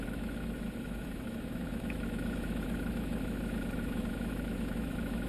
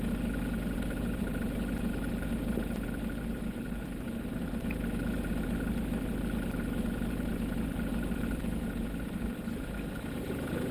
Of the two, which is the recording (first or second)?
second